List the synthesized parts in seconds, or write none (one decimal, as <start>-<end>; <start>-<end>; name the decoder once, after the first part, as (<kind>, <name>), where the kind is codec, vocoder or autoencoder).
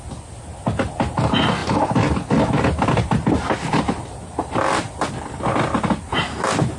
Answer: none